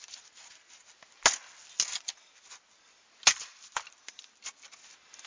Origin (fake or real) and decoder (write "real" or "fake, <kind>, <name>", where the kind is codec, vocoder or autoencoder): real